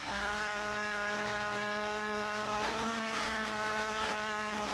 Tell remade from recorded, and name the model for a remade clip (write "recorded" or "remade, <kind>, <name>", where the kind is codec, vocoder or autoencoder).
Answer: remade, codec, SNAC